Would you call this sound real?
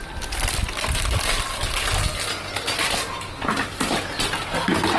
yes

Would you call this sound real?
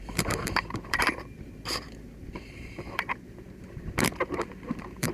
no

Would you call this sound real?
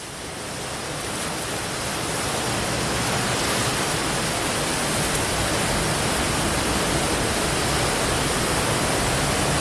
yes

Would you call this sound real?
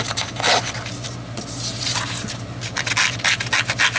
yes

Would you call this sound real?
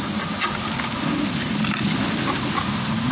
yes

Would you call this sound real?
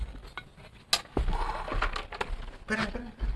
yes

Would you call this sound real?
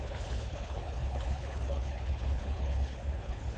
no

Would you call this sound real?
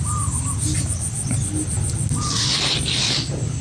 yes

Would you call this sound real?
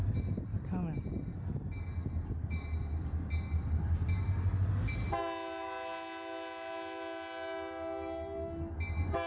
yes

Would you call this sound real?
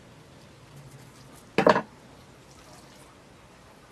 yes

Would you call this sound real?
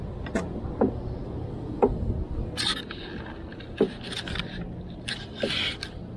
yes